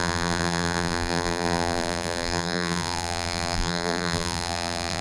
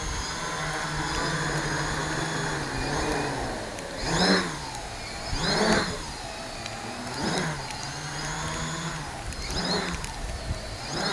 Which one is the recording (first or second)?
second